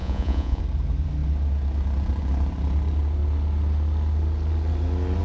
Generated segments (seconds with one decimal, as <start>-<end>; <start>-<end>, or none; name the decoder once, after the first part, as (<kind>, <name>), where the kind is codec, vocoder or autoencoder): 0.0-0.6 (vocoder, Vocos)